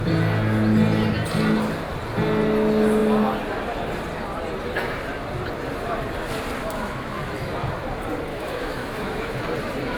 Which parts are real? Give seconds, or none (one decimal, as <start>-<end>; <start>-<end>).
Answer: 0.0-6.6; 7.3-8.3; 9.4-10.0